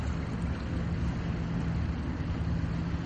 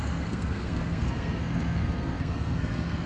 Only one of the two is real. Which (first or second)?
first